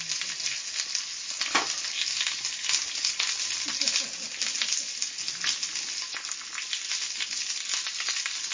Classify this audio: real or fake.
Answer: real